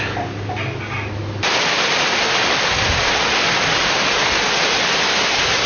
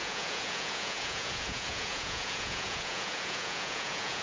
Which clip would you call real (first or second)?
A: first